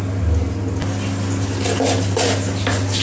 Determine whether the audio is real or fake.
real